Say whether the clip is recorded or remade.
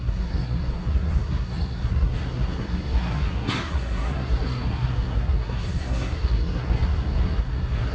remade